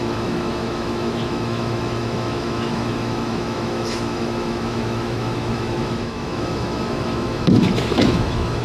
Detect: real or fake fake